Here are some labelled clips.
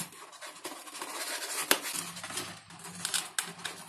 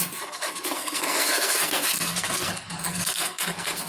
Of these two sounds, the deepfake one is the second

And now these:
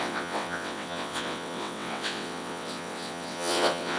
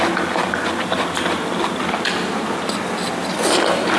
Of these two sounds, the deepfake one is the first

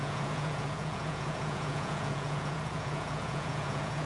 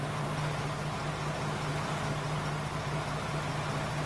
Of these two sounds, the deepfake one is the first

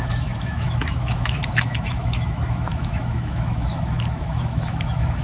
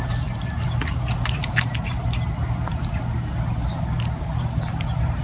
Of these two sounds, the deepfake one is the first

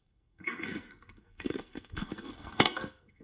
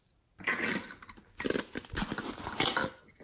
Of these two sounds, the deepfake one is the first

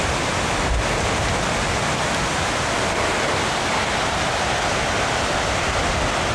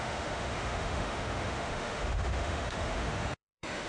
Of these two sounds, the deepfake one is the second